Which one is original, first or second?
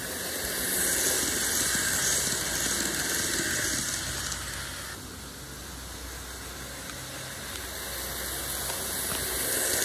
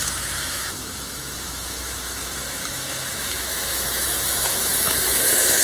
first